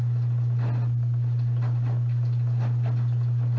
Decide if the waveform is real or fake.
real